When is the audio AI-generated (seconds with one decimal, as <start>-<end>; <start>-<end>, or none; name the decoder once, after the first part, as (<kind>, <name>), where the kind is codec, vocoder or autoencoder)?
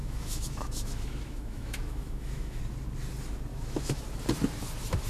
0.0-2.6 (autoencoder, DAC-VAE); 3.5-4.0